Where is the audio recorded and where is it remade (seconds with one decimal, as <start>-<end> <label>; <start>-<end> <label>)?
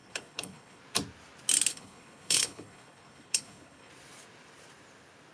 0.0-0.8 remade; 0.8-1.7 recorded; 1.7-3.9 remade; 3.9-5.3 recorded